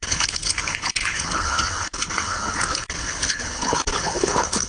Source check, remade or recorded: remade